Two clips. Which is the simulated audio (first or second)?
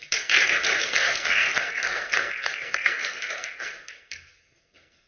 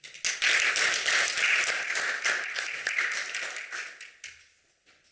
first